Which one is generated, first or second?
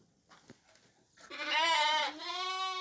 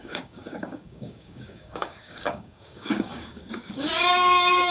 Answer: second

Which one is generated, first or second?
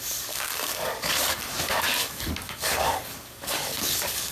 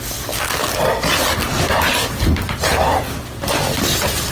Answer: first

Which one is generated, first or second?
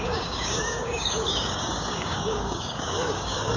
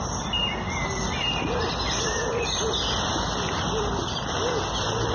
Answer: first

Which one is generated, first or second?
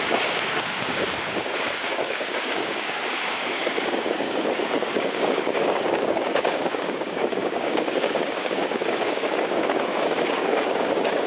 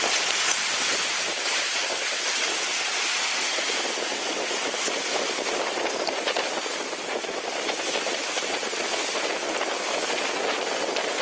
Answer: first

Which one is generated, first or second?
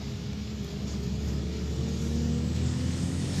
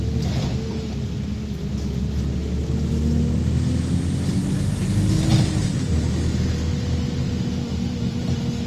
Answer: first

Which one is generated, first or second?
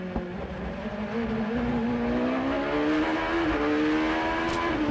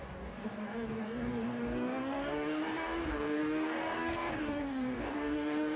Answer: second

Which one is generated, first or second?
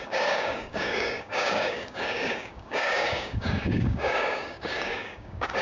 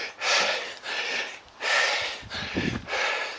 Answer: first